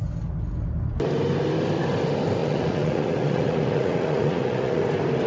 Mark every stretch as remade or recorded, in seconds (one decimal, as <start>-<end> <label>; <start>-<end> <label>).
0.0-2.4 recorded; 2.4-4.8 remade; 4.8-5.3 recorded